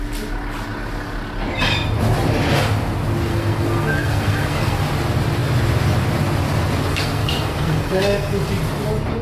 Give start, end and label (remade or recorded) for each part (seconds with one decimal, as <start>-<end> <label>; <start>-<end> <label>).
0.0-3.3 recorded; 3.3-4.8 remade; 4.8-6.9 recorded; 6.9-8.5 remade; 8.5-9.2 recorded

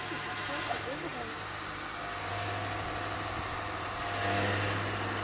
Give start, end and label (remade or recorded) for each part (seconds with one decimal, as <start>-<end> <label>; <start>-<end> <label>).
0.0-5.2 recorded

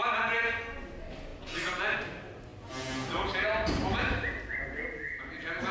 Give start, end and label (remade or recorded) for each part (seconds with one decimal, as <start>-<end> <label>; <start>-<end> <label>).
0.0-5.7 recorded